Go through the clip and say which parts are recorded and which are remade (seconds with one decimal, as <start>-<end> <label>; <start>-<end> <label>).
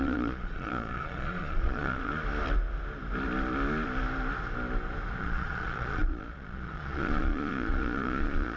0.0-2.1 remade; 2.1-5.2 recorded; 5.2-8.6 remade